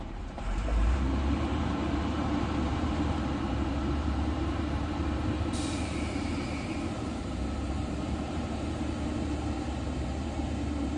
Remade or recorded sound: remade